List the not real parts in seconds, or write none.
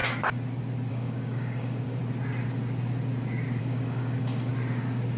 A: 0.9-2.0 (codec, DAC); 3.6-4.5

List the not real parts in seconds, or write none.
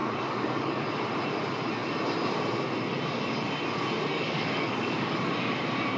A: 0.0-0.8 (codec, DAC); 4.1-5.3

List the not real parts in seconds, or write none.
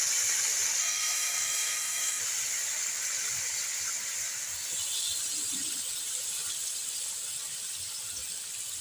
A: 0.8-2.2 (codec, DAC)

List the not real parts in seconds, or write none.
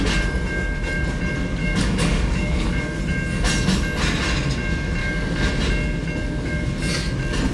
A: 1.6-3.0 (codec, DAC); 5.0-5.5; 6.2-6.7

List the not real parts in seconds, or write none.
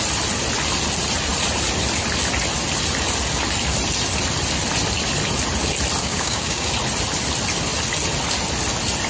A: 6.0-6.7 (codec, DAC)